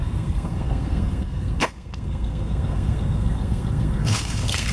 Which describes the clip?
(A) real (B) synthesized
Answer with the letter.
B